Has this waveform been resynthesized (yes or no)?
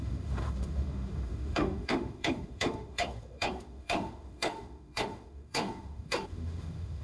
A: yes